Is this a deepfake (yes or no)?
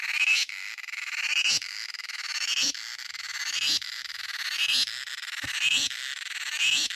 yes